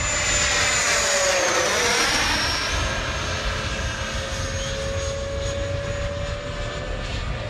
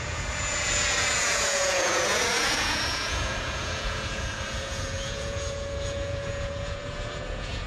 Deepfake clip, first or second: second